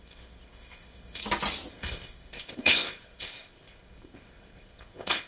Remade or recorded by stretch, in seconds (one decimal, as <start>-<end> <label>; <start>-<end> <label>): 0.0-1.2 remade; 1.2-1.7 recorded; 1.7-5.3 remade